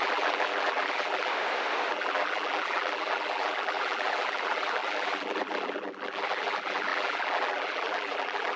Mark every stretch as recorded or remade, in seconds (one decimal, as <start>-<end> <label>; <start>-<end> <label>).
0.0-1.3 remade; 1.3-1.9 recorded; 1.9-8.6 remade